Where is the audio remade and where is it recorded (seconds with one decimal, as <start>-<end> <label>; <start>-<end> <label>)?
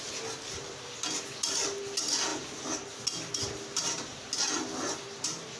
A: 0.0-5.6 recorded